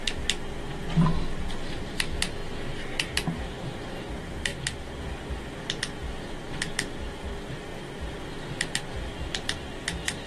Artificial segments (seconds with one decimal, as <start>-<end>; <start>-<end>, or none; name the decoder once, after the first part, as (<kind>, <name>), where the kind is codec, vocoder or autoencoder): none